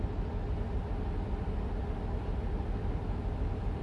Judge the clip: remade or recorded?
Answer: recorded